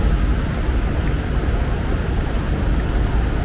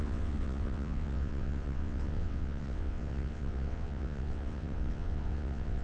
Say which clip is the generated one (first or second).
second